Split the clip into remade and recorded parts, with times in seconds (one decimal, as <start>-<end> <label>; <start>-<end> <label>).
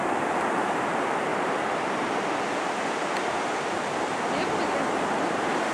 0.0-1.3 recorded; 1.3-4.7 remade; 4.7-5.7 recorded